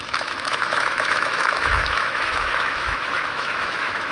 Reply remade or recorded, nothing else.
remade